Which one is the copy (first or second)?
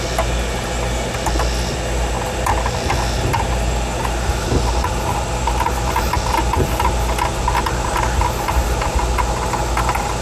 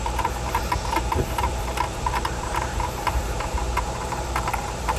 second